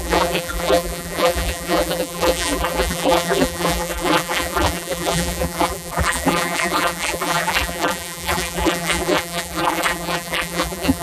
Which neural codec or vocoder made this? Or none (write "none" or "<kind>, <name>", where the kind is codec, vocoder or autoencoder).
vocoder, BigVGAN v2